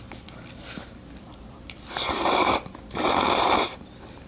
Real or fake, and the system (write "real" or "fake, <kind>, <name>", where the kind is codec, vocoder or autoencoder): real